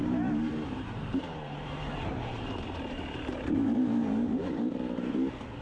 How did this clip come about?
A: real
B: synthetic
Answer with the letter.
B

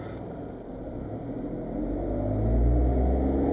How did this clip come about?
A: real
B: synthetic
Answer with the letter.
A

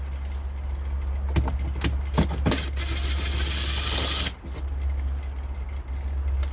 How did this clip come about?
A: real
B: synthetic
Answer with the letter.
A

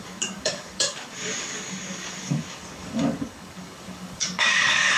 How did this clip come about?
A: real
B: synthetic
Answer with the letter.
B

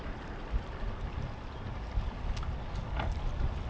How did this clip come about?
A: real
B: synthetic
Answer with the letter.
A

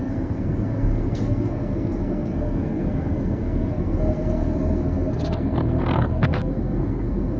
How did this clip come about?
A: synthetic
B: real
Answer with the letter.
A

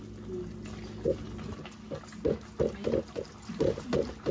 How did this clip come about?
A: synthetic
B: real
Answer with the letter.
B